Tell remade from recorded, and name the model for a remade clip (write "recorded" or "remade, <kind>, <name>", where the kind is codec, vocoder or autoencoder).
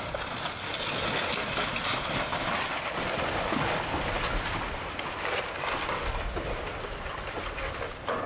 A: recorded